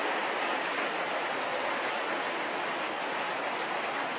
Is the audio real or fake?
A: fake